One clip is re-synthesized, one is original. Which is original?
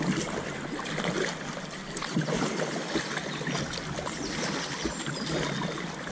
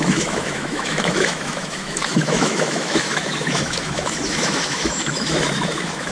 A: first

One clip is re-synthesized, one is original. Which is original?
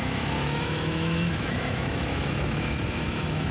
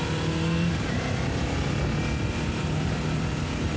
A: second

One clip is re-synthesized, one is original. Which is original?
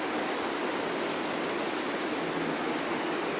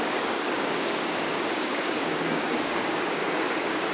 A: first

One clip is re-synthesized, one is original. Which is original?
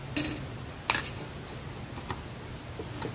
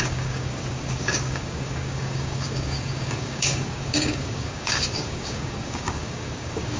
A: first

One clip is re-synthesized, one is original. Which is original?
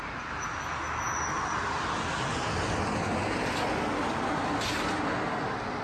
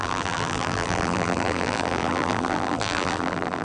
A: first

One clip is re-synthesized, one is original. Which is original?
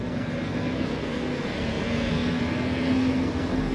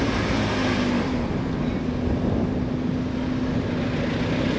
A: second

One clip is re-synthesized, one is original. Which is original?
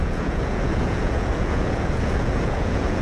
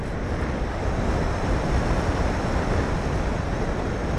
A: second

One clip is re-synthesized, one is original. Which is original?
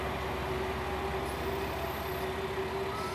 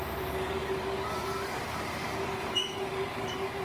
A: first